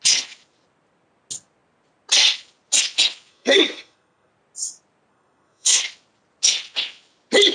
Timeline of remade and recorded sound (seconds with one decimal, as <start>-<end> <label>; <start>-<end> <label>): 0.0-3.3 recorded; 3.3-4.3 remade; 4.3-5.1 recorded; 5.1-5.8 remade; 5.8-7.5 recorded